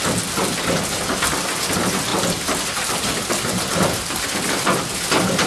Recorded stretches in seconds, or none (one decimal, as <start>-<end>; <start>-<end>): 0.0-5.5